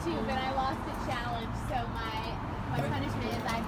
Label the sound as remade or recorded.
recorded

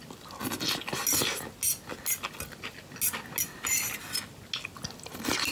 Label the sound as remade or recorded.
recorded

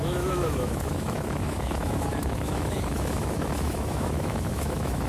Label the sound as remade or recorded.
remade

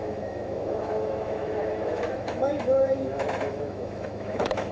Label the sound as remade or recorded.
remade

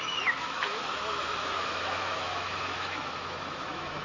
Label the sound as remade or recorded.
remade